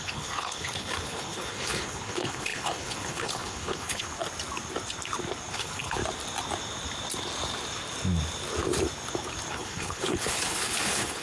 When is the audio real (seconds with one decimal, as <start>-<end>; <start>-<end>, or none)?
4.1-5.5; 6.0-9.5